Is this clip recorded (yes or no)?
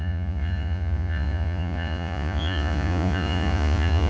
no